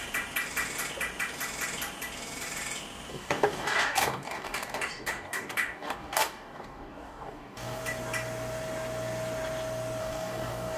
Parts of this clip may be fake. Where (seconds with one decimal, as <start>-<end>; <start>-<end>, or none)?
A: 3.1-7.8; 10.0-10.8